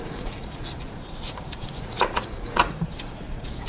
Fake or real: fake